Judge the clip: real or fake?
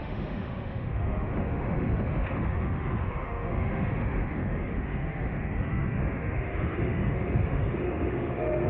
fake